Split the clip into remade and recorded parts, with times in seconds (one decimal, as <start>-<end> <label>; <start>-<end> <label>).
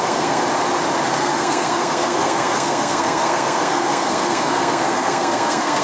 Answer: 0.0-0.4 remade; 0.4-1.1 recorded; 1.1-5.8 remade